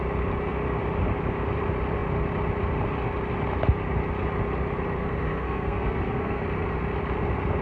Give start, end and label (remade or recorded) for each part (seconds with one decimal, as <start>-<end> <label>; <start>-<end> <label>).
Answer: 0.0-5.0 recorded; 5.0-6.4 remade; 6.4-7.6 recorded